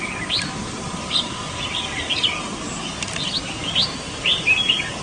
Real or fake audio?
real